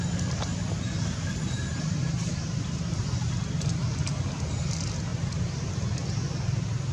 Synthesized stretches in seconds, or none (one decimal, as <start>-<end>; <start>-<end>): 1.7-3.0; 5.1-5.7